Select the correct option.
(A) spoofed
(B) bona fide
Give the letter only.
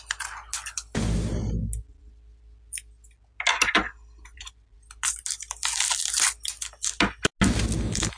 B